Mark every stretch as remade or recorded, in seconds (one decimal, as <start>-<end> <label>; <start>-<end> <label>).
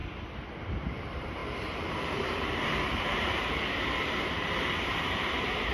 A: 0.0-0.6 recorded; 0.6-5.7 remade